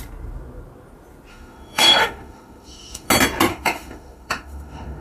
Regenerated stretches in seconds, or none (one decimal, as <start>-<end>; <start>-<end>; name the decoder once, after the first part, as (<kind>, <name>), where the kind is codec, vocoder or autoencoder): 1.3-3.1 (autoencoder, DAC-VAE); 3.5-5.0